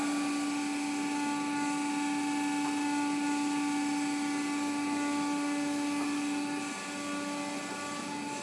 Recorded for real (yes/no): yes